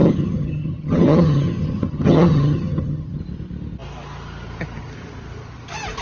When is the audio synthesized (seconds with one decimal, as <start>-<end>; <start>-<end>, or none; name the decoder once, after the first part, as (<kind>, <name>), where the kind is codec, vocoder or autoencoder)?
0.0-3.2 (vocoder, HiFi-GAN)